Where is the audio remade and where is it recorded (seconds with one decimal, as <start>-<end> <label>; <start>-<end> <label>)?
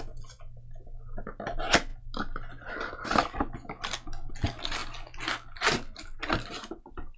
0.0-7.2 recorded